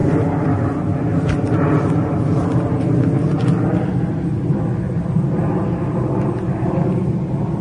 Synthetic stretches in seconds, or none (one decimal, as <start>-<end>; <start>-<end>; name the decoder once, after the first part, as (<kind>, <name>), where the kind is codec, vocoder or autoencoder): none